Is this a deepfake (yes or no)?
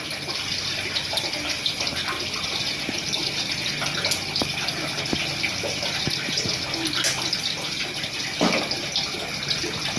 no